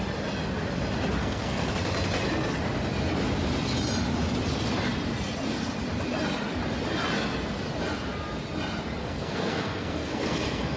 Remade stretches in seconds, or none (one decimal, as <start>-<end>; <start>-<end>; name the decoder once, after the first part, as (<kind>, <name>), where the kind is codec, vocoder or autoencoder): 1.2-1.7 (codec, SNAC); 9.0-10.8